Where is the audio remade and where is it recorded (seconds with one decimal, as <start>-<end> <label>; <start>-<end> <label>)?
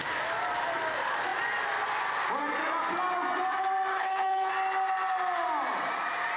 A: 0.0-3.9 recorded; 3.9-4.5 remade; 4.5-6.4 recorded